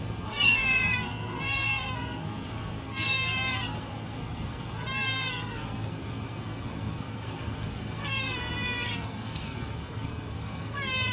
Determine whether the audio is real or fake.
fake